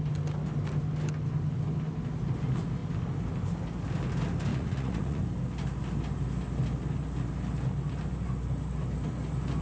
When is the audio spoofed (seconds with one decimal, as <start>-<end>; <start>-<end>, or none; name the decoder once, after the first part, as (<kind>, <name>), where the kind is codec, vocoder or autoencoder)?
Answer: 4.5-5.2 (vocoder, Vocos)